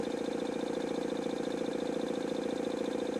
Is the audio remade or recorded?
recorded